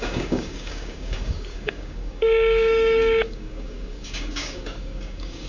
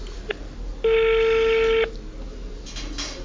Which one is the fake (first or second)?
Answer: first